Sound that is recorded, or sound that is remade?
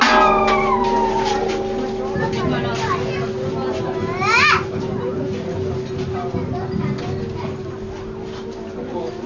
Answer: recorded